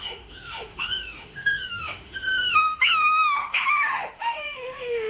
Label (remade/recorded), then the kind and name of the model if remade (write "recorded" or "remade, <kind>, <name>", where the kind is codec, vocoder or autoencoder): remade, autoencoder, DAC-VAE